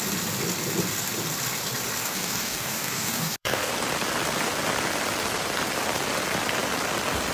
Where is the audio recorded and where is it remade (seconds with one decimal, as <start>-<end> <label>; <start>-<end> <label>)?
0.0-2.0 recorded; 2.0-3.7 remade; 3.7-7.3 recorded